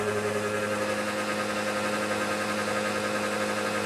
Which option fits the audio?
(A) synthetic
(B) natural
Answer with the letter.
B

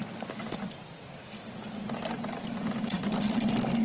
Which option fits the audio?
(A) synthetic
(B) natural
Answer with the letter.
B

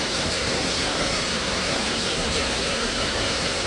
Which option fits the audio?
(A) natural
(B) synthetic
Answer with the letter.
B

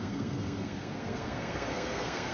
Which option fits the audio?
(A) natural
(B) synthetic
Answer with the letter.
B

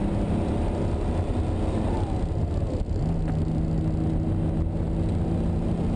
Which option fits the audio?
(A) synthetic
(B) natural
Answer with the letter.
B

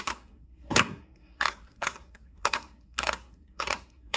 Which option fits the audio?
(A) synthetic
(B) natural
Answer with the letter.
A